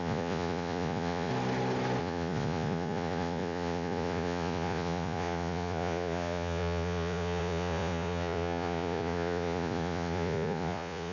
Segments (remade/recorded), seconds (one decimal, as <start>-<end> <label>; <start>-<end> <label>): 0.0-1.3 remade; 1.3-2.0 recorded; 2.0-11.1 remade